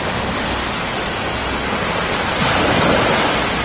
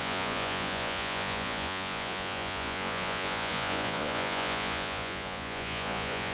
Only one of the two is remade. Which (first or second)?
second